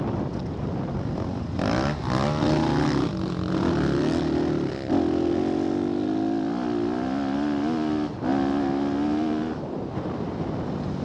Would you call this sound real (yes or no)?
yes